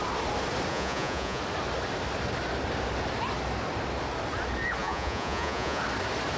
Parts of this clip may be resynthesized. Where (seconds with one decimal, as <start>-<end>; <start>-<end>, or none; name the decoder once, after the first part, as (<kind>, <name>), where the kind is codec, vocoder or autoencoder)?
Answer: 0.7-1.4 (vocoder, Vocos); 4.8-5.8